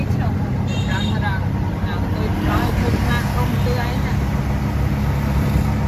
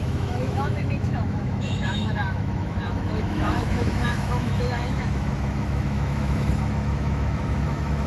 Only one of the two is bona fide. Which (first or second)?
first